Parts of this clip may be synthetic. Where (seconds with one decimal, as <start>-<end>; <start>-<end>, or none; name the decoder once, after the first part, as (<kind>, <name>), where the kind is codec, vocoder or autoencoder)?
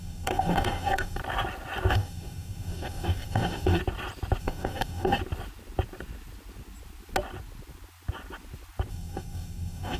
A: 0.0-1.2 (codec, DAC); 1.9-3.8; 4.4-5.2; 8.9-10.0